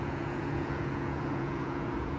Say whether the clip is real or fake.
fake